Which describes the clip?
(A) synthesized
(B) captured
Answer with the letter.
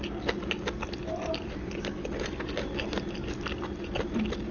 B